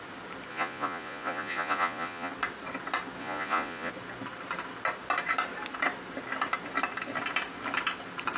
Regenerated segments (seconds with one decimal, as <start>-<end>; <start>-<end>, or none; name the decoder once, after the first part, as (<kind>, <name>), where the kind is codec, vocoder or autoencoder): 0.5-2.3 (vocoder, Vocos); 3.2-3.9